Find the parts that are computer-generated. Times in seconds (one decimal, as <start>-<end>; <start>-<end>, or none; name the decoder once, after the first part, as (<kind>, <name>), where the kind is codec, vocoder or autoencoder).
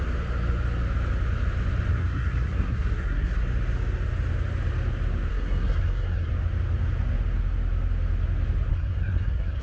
1.9-3.4 (codec, SNAC); 5.3-6.3; 8.7-9.6